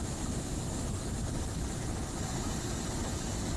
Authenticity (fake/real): real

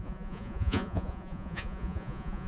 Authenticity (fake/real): fake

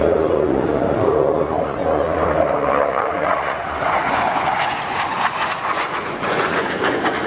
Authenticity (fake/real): fake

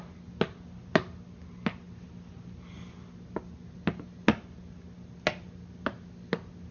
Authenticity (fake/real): real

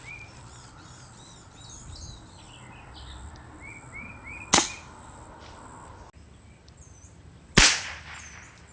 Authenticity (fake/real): real